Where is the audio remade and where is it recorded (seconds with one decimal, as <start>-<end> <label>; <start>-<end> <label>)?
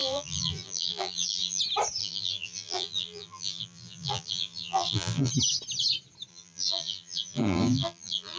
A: 0.0-1.6 remade; 1.6-2.0 recorded; 2.0-5.3 remade; 5.3-6.3 recorded; 6.3-8.4 remade